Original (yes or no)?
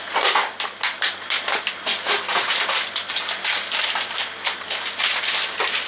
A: yes